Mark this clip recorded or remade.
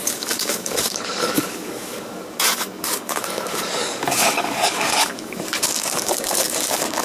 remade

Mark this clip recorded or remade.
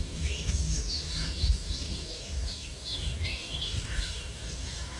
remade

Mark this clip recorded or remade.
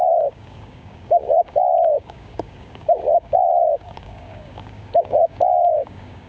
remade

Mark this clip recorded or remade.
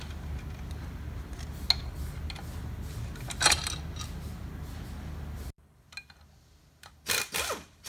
recorded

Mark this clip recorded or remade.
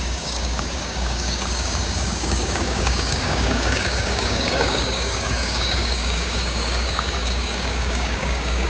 remade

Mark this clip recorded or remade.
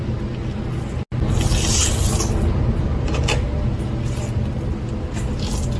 recorded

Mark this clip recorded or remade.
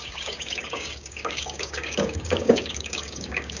remade